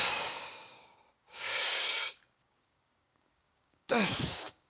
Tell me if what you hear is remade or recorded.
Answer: remade